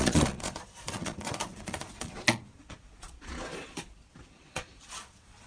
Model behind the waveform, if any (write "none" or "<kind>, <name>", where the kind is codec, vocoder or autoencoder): vocoder, Vocos